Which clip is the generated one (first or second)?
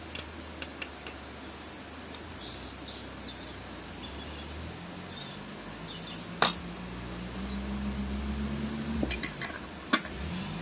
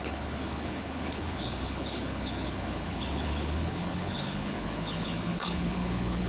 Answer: second